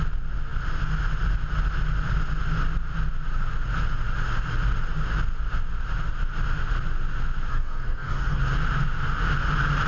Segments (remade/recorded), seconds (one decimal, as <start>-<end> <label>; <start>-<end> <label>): 0.0-7.5 recorded; 7.5-8.4 remade; 8.4-9.9 recorded